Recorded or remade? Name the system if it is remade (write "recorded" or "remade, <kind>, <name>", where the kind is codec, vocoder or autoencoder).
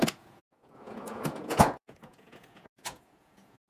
remade, vocoder, Vocos